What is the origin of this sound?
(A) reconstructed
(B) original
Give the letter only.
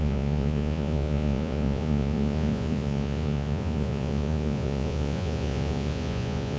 A